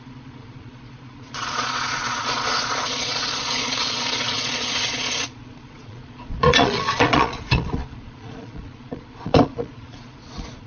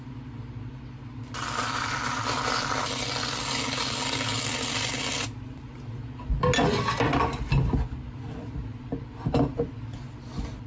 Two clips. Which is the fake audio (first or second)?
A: first